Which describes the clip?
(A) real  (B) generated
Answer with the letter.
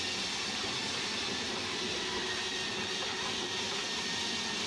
A